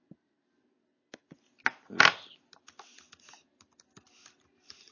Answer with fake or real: real